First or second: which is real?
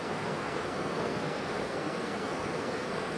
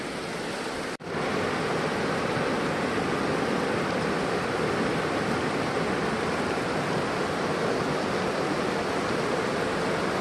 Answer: second